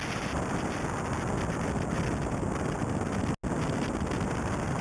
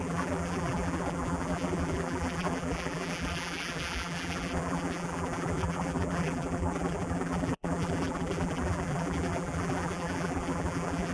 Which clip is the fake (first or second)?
second